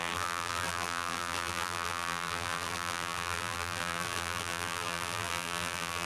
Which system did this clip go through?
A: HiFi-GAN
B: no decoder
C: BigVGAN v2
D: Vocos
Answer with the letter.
C